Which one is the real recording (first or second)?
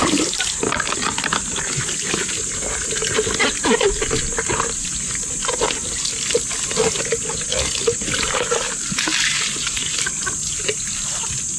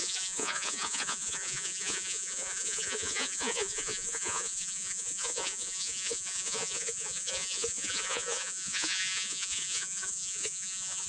first